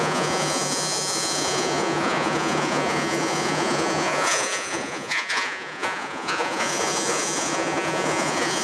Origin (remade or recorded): remade